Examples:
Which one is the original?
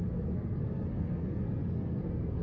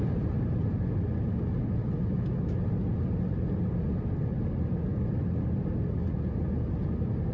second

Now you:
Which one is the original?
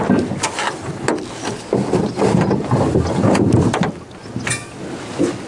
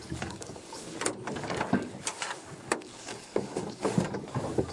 first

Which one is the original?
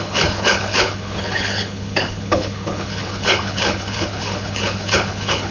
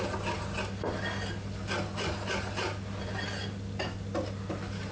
second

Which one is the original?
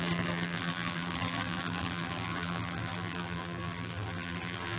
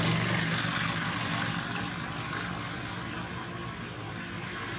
second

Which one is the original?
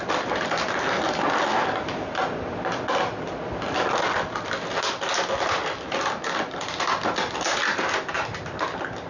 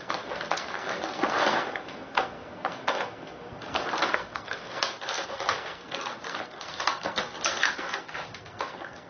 first